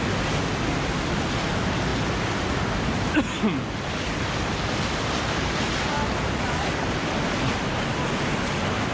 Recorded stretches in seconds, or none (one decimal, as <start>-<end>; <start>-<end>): 0.0-8.9